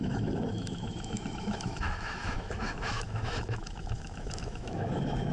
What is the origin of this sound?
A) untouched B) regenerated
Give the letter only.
B